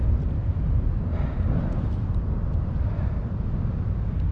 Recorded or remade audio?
recorded